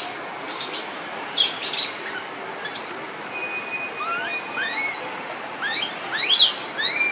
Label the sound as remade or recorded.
recorded